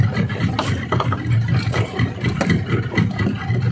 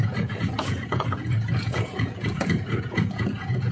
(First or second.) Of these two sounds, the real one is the first